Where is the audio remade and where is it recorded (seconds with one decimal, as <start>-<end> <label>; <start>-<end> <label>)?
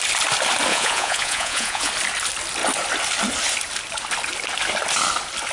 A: 0.0-0.7 recorded; 0.7-1.9 remade; 1.9-5.5 recorded